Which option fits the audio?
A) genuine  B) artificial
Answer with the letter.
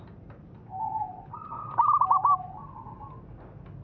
A